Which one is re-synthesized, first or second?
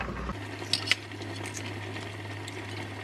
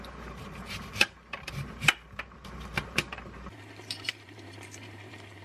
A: second